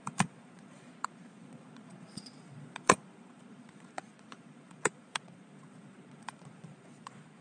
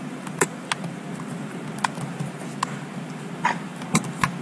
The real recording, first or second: second